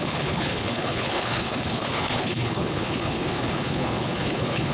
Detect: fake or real fake